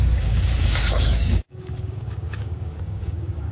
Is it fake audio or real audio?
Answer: fake